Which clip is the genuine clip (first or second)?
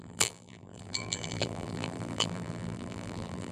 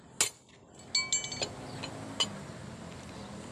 second